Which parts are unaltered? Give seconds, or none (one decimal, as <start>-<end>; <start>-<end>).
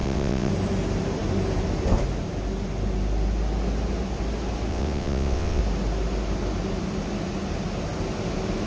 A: 0.5-4.7; 5.6-8.7